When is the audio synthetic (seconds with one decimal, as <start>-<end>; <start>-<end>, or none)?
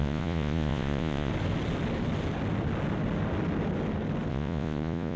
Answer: 0.0-1.3; 4.3-5.2